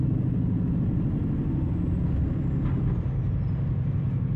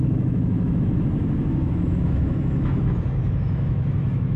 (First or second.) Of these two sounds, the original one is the first